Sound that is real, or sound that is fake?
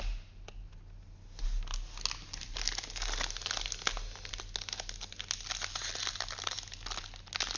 real